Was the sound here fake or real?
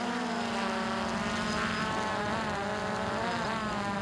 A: real